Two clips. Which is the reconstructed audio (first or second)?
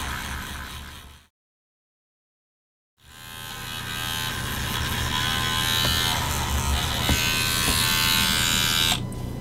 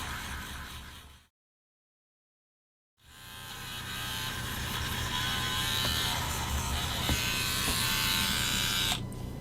second